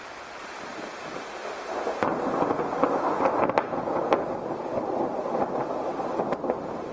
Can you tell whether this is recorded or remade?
recorded